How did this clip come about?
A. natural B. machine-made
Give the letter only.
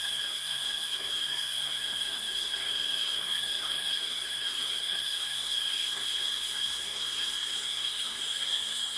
B